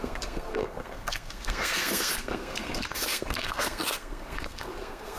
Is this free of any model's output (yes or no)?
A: no